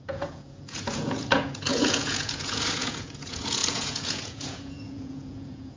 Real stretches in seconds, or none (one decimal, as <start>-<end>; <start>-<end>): none